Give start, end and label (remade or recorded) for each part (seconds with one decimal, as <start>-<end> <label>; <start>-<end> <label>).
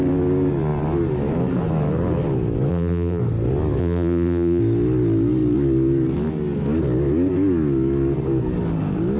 0.0-2.7 recorded; 2.7-3.2 remade; 3.2-3.8 recorded; 3.8-4.6 remade; 4.6-9.2 recorded